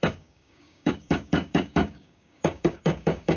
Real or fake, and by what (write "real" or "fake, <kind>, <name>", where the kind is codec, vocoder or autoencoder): fake, codec, DAC